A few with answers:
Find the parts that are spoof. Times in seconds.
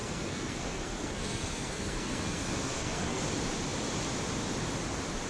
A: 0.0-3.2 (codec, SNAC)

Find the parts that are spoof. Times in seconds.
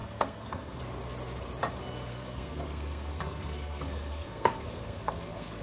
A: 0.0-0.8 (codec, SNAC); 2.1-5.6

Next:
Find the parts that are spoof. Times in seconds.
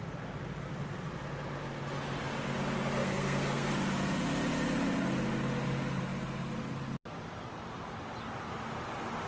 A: 3.0-3.7 (codec, SNAC)